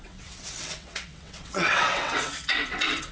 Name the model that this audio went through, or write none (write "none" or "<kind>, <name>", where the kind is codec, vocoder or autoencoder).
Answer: vocoder, WaveNeXt